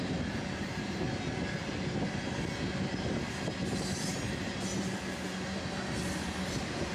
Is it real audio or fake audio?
real